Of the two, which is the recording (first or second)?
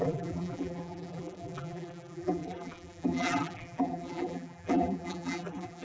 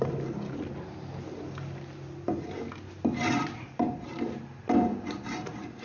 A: second